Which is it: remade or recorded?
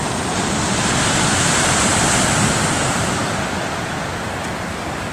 recorded